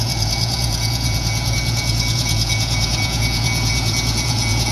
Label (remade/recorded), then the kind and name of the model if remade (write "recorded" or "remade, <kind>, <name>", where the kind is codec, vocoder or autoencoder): remade, vocoder, Vocos